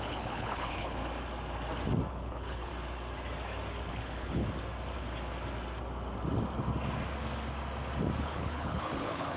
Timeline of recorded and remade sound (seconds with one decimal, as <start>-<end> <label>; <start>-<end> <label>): 0.0-1.0 remade; 1.0-2.1 recorded; 2.1-2.7 remade; 2.7-3.9 recorded; 3.9-4.4 remade; 4.4-8.2 recorded; 8.2-9.4 remade